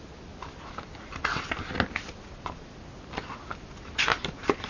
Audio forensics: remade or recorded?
recorded